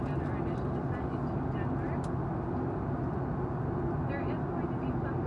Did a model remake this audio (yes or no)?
no